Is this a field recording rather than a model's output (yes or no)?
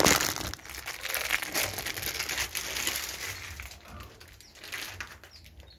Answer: yes